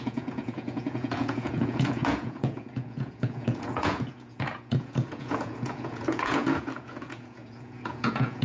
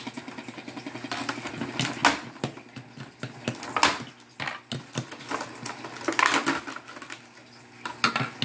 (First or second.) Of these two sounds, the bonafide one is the second